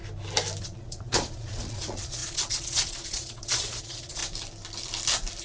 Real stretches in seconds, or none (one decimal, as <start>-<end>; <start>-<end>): 0.0-0.6; 4.2-5.4

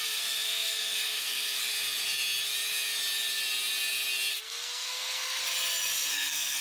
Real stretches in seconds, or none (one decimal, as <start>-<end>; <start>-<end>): 1.6-4.3; 5.4-6.1

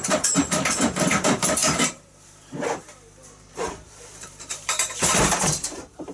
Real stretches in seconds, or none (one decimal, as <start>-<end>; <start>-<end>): none

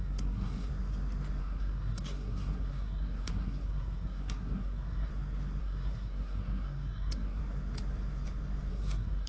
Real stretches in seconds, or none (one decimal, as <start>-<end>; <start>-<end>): 0.7-1.4; 5.1-5.6; 7.4-8.7

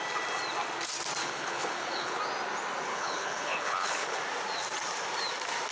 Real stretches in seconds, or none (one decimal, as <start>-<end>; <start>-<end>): 0.0-1.2; 2.2-2.9; 4.2-5.7

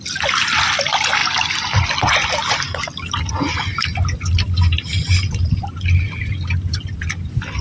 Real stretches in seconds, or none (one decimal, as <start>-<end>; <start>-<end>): 0.0-7.6

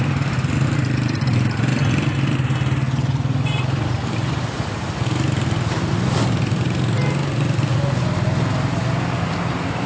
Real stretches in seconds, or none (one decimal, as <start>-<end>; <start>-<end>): 1.7-4.4; 7.2-9.9

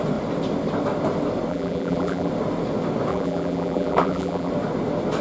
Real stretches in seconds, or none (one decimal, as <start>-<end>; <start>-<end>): 0.0-1.5; 2.3-3.1; 4.5-5.2